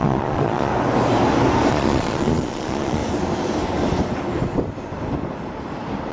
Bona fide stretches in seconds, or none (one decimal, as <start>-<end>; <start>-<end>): 0.7-1.7; 3.0-6.1

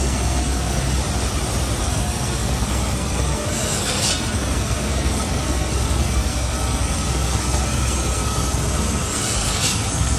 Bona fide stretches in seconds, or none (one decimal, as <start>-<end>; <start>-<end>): 1.0-1.8

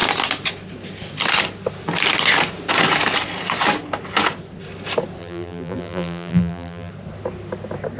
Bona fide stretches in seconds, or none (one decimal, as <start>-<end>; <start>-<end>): 0.0-5.2; 6.9-8.0

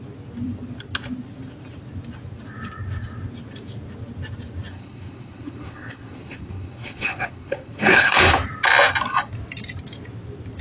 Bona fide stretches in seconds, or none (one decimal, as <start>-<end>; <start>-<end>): 0.0-4.7; 8.3-10.6